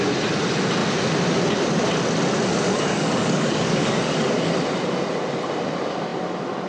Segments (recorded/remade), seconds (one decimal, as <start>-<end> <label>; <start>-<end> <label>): 0.0-2.5 recorded; 2.5-4.5 remade; 4.5-6.7 recorded